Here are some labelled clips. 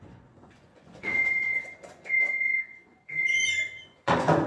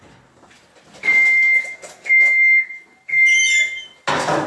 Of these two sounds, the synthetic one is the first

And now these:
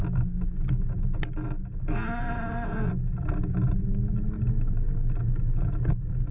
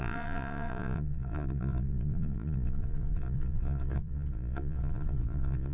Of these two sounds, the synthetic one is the second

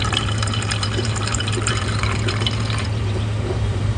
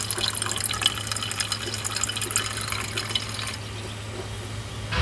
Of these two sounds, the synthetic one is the first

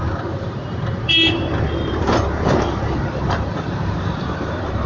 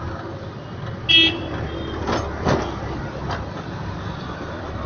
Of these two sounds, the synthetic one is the first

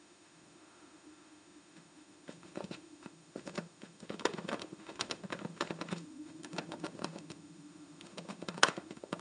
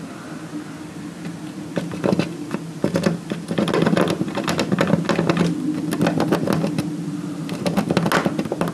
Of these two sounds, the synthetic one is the first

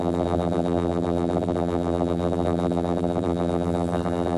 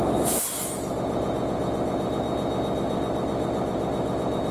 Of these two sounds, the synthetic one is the first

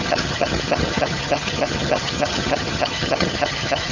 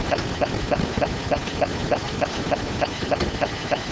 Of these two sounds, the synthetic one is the first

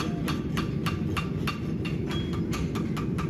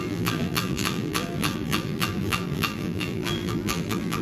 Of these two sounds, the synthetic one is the second